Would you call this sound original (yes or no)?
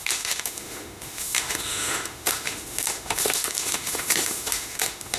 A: no